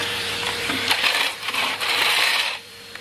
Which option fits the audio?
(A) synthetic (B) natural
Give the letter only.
A